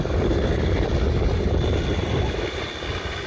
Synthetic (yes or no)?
no